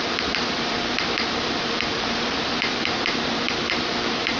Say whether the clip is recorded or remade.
remade